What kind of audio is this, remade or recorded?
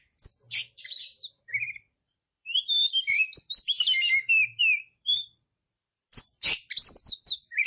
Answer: remade